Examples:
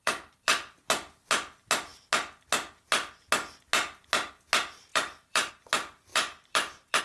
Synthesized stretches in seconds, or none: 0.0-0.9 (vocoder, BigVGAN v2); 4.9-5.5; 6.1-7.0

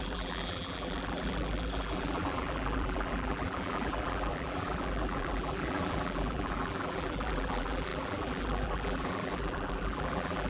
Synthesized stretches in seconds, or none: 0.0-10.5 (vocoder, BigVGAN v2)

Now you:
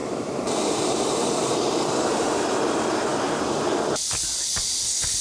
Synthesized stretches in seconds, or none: 0.0-3.1 (vocoder, BigVGAN v2)

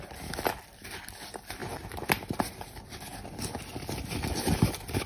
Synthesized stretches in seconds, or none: 1.6-2.8 (vocoder, BigVGAN v2)

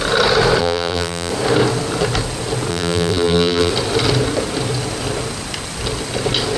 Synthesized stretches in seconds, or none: 0.6-1.3 (vocoder, BigVGAN v2); 2.7-3.7